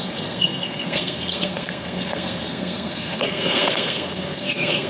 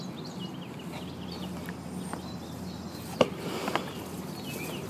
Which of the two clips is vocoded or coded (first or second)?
first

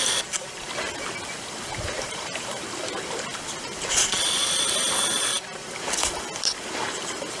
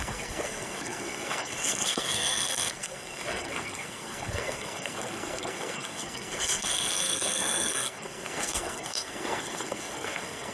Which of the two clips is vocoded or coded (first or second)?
second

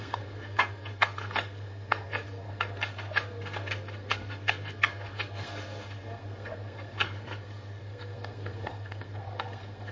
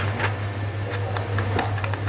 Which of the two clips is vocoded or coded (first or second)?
first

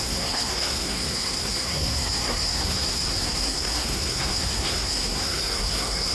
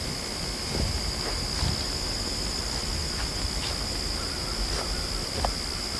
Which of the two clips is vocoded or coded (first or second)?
first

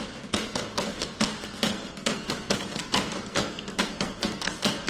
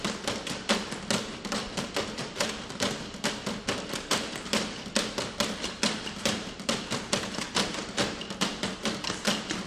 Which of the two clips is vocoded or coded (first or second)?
first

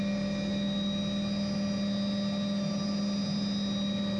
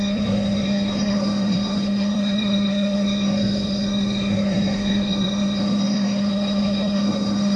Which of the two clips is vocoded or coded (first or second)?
second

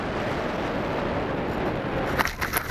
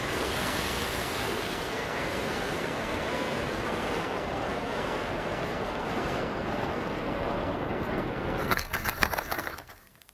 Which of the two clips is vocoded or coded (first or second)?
second